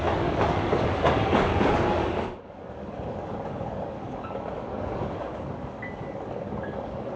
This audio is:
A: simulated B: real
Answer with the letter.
A